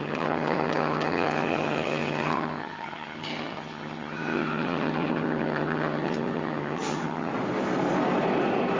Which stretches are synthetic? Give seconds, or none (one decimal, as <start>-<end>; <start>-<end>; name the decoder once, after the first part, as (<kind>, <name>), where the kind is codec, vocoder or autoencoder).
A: 0.0-7.3 (vocoder, HiFi-GAN)